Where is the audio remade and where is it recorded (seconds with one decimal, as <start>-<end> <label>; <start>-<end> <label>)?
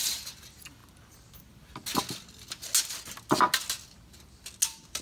0.0-5.0 recorded